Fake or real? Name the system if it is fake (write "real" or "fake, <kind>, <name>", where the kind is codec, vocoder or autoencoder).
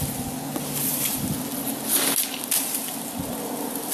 real